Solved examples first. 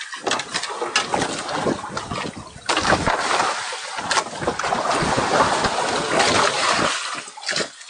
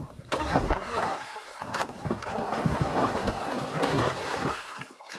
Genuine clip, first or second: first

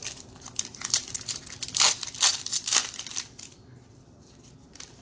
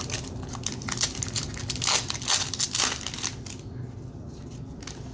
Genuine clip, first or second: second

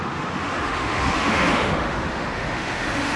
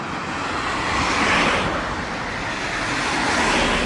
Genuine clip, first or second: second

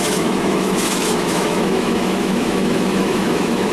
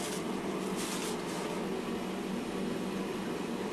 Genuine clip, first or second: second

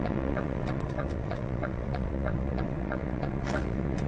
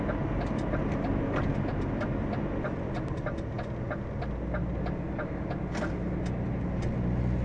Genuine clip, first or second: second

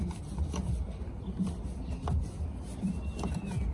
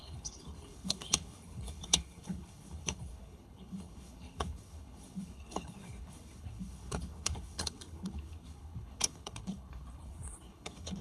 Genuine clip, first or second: first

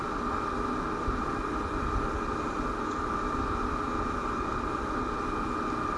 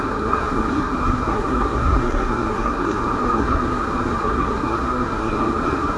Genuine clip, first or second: first